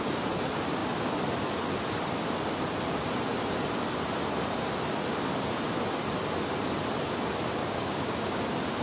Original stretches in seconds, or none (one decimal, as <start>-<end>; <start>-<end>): 0.0-7.6; 8.4-8.8